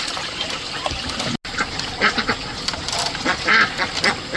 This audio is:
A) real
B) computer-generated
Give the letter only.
A